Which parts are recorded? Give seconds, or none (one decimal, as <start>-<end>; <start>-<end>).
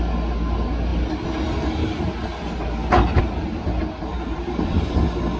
0.0-4.1; 4.9-5.4